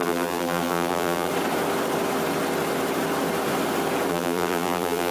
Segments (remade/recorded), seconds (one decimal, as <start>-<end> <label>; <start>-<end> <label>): 0.0-1.3 remade; 1.3-4.1 recorded; 4.1-5.1 remade